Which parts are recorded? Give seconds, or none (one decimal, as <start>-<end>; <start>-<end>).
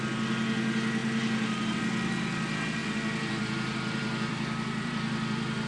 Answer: 0.0-2.8